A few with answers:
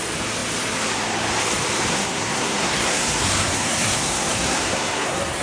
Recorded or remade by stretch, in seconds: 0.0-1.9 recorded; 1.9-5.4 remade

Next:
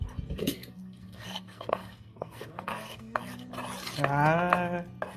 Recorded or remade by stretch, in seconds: 0.0-0.4 recorded; 0.4-3.5 remade; 3.5-5.2 recorded

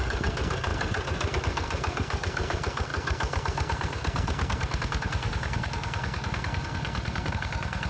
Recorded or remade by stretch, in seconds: 0.0-7.9 remade

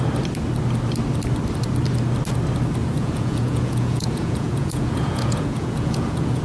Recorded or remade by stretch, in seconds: 0.0-2.8 recorded; 2.8-6.4 remade

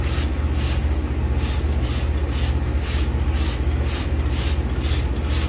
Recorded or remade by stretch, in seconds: 0.0-5.5 recorded